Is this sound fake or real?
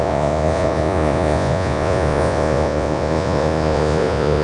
fake